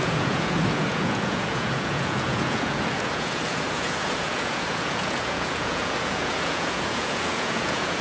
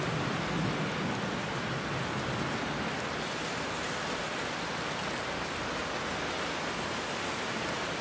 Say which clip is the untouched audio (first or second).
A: second